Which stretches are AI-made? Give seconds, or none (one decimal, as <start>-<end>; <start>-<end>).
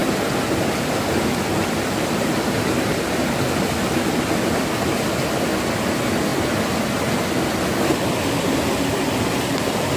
none